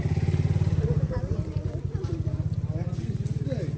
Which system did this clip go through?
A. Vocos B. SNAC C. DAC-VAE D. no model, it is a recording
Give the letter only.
D